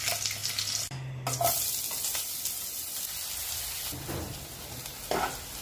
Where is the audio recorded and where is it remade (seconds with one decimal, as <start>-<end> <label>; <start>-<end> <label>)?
0.0-5.6 recorded